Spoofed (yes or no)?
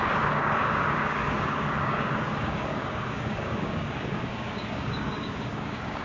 yes